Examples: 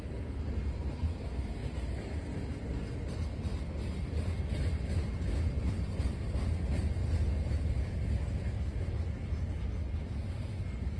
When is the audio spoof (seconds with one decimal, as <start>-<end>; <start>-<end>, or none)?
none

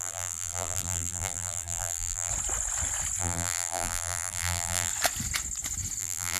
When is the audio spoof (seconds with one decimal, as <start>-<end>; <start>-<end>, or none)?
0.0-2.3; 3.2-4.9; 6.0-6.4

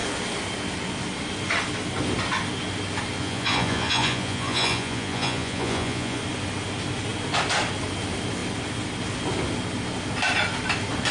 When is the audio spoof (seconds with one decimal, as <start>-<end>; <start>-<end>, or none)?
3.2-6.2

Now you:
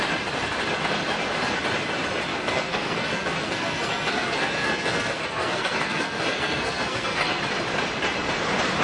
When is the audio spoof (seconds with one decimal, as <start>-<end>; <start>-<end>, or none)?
2.3-7.4

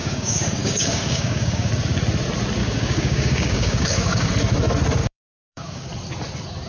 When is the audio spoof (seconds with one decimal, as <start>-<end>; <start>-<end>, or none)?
0.0-1.7; 2.6-4.3; 5.0-5.9

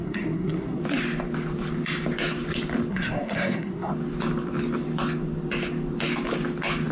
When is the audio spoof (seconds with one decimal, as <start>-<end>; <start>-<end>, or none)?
0.0-0.8; 2.9-3.9

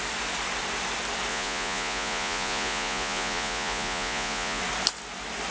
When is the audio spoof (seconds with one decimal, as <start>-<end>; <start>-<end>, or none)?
1.3-4.6

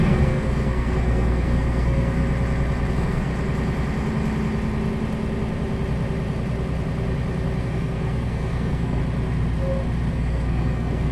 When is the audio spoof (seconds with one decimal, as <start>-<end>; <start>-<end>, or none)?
0.0-2.2; 2.9-3.3; 7.6-9.0; 10.1-11.1